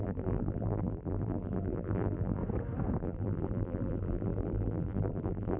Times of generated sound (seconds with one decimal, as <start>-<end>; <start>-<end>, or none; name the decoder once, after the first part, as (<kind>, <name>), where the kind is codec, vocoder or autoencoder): 0.0-2.4 (vocoder, BigVGAN v2); 3.0-5.6